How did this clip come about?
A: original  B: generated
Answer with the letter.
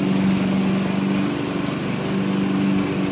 A